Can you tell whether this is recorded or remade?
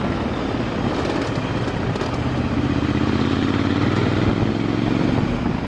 recorded